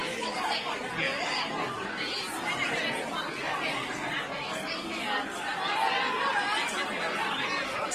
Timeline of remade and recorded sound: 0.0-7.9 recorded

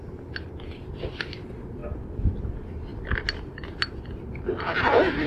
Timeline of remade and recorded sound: 0.0-5.3 recorded

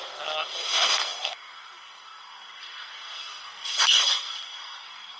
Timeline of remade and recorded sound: 0.0-5.2 remade

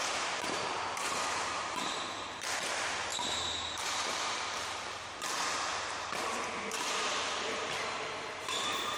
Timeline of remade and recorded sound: 0.0-5.7 remade; 5.7-7.0 recorded; 7.0-9.0 remade

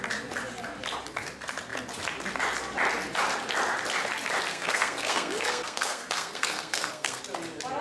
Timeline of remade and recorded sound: 0.0-4.5 recorded; 4.5-7.2 remade; 7.2-7.8 recorded